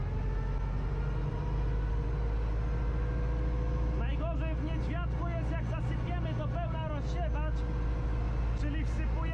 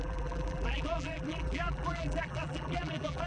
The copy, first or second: second